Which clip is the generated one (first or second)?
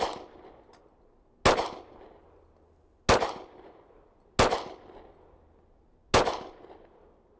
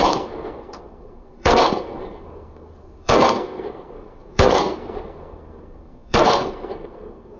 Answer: second